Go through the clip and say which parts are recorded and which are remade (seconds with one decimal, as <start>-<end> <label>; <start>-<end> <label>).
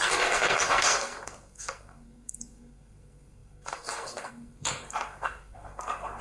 0.0-6.2 remade